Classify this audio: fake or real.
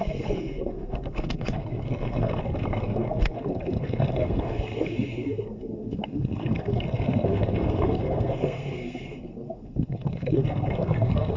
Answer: fake